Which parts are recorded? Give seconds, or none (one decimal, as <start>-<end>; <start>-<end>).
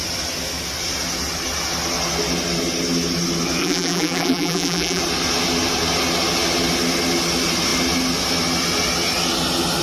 0.0-3.6; 5.0-9.8